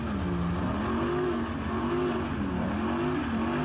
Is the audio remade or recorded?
recorded